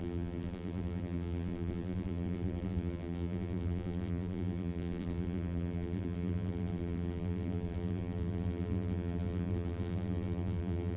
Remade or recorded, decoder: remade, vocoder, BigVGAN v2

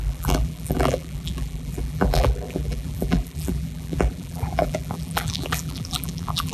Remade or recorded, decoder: remade, vocoder, BigVGAN v2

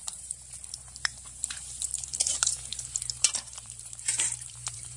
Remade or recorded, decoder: remade, vocoder, BigVGAN v2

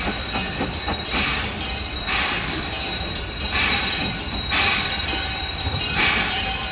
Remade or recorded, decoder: remade, vocoder, BigVGAN v2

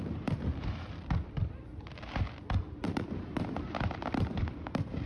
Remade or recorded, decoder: remade, vocoder, BigVGAN v2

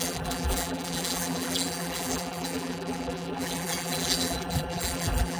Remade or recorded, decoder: remade, vocoder, BigVGAN v2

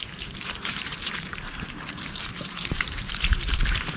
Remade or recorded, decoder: remade, vocoder, BigVGAN v2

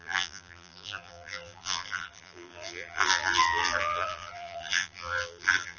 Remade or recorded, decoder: remade, vocoder, BigVGAN v2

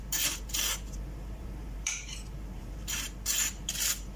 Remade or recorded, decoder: remade, vocoder, BigVGAN v2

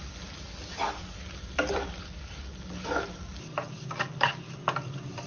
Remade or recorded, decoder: recorded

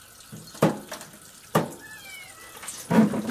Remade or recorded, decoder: recorded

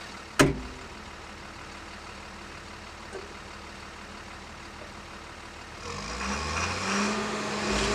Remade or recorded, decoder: recorded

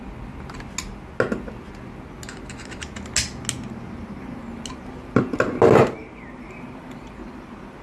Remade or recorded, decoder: recorded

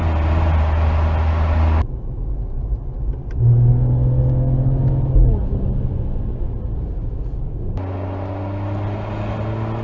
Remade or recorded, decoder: recorded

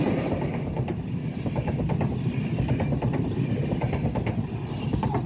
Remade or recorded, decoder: remade, vocoder, BigVGAN v2